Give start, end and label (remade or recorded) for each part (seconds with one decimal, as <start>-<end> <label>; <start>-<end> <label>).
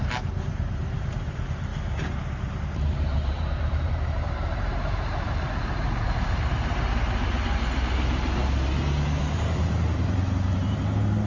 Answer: 0.0-1.7 remade; 1.7-2.2 recorded; 2.2-11.3 remade